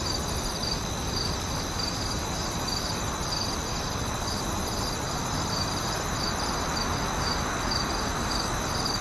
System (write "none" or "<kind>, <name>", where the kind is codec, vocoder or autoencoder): none